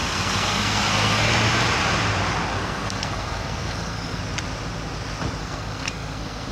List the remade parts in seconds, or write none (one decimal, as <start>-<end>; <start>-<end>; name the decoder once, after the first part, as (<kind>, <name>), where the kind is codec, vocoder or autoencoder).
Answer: 0.0-1.3 (codec, SNAC); 2.5-4.2; 5.4-6.5